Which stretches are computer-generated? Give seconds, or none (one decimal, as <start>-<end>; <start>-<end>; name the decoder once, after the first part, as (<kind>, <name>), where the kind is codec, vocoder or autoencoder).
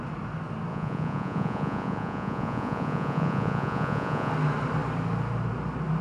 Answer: 0.7-4.3 (vocoder, Vocos)